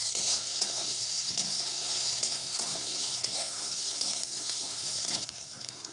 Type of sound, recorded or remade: remade